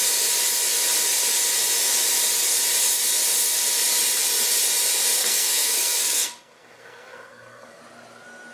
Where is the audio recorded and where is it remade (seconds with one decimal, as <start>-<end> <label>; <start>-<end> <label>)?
0.0-5.2 recorded; 5.2-7.8 remade; 7.8-8.5 recorded